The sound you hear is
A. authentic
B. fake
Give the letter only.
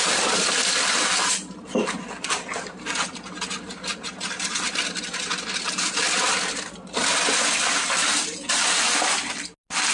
A